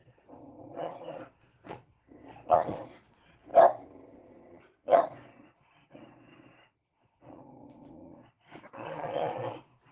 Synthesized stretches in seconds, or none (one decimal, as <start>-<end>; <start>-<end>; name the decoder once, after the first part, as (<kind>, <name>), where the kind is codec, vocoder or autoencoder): 0.0-3.5 (vocoder, Vocos); 4.0-9.9